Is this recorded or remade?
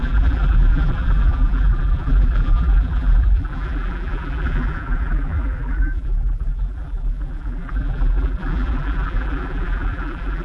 remade